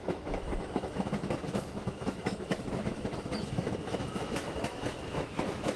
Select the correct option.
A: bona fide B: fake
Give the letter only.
B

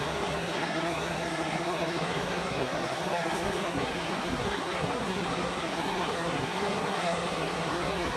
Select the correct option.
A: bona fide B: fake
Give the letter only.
B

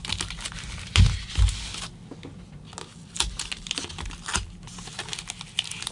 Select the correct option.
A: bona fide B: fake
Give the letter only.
A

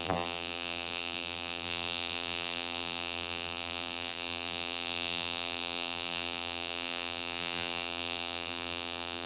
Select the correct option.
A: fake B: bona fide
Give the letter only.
A